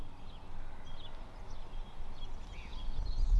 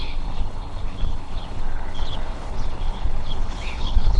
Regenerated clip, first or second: second